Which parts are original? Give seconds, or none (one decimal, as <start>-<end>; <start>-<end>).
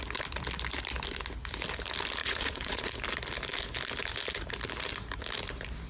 0.0-2.2; 2.9-5.9